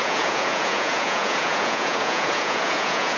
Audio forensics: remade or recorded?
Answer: remade